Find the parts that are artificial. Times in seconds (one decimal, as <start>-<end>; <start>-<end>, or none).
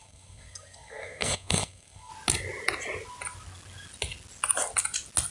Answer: 0.0-2.1